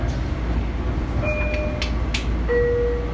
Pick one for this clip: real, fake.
real